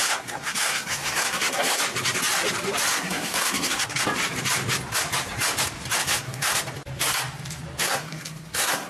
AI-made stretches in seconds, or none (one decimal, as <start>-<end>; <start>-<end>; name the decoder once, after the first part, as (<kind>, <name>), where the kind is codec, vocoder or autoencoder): 0.0-1.8 (codec, SNAC); 2.9-4.0; 6.0-6.6; 7.8-8.9